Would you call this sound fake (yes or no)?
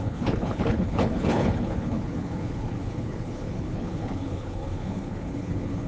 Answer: yes